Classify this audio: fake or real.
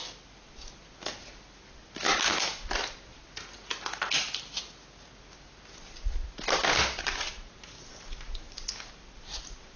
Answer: real